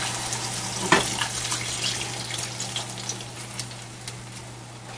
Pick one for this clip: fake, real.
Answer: real